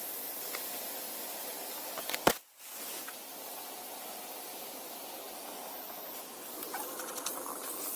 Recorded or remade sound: recorded